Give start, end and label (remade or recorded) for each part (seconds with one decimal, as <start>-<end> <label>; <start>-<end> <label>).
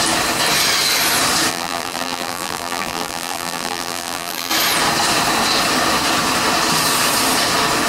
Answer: 0.0-1.5 recorded; 1.5-4.5 remade; 4.5-7.9 recorded